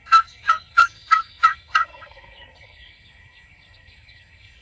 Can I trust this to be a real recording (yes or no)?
no